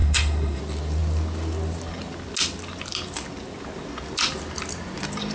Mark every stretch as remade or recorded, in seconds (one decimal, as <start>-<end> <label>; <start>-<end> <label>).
0.0-0.6 remade; 0.6-5.3 recorded